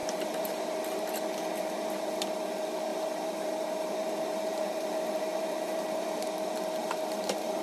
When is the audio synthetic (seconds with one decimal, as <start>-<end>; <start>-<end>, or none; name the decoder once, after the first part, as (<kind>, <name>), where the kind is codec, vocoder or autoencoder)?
0.0-0.6 (vocoder, BigVGAN v2); 2.9-6.2; 6.8-7.6